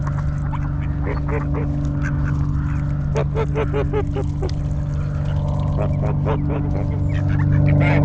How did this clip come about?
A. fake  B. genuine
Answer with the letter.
B